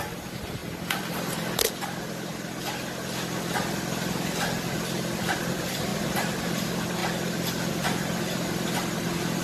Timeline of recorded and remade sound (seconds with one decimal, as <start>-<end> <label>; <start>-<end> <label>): 0.0-0.6 remade; 0.6-5.4 recorded; 5.4-7.0 remade; 7.0-7.7 recorded; 7.7-9.4 remade